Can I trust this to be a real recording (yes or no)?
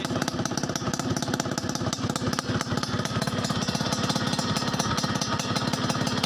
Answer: yes